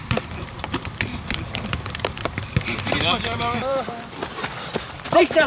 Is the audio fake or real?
fake